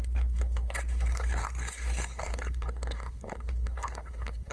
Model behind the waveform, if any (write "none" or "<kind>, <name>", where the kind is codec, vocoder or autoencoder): codec, SNAC